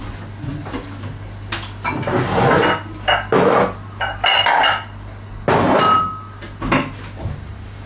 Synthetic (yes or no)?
no